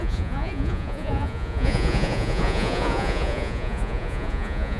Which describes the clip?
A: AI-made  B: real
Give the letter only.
A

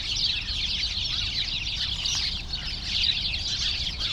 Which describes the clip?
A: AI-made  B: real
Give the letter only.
B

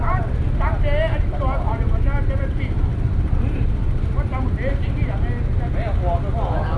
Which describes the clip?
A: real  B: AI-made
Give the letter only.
A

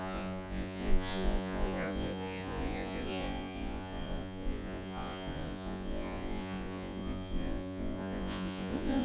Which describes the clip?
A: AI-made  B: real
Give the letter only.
A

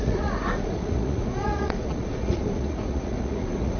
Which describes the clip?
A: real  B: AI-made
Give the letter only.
B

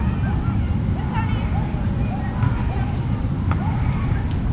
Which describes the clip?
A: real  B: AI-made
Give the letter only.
A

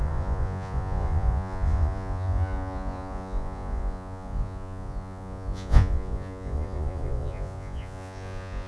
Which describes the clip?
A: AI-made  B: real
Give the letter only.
A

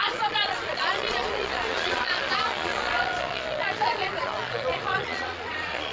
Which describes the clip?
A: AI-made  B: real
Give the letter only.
A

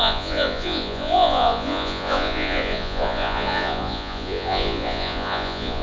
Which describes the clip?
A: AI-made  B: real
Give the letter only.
A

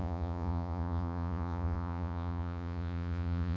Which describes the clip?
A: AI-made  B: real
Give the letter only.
A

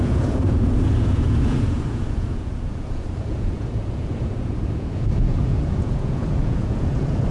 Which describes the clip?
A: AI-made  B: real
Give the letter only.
A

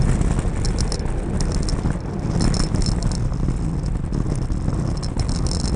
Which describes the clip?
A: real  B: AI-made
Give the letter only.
A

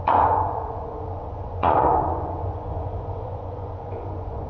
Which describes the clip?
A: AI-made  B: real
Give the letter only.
A